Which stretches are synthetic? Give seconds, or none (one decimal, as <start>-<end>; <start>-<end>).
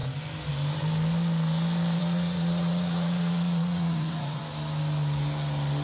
2.0-4.4